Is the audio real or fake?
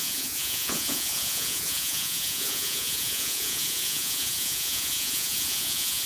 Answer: fake